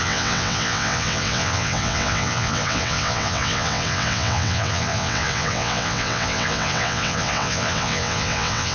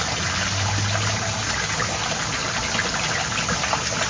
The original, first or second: second